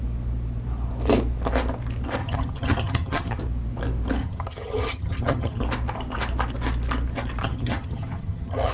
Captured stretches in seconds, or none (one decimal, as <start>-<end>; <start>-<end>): 0.0-2.2; 3.4-4.2; 5.6-7.4